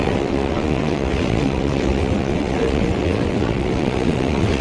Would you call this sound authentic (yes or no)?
no